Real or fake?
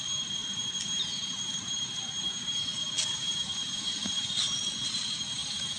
real